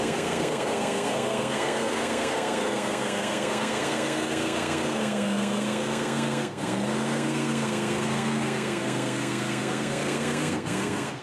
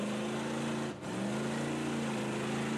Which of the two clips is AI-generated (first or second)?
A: first